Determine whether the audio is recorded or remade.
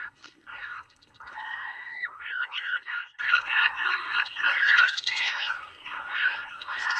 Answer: remade